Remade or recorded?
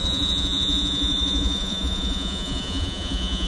remade